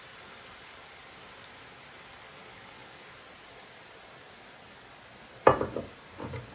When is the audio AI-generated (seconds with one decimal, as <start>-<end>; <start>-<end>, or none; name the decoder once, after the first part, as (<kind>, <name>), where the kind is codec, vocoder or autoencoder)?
2.5-3.1 (codec, DAC)